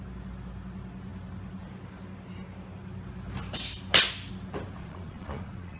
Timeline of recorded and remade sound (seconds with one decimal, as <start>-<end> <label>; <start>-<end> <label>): 0.0-4.8 recorded; 4.8-5.8 remade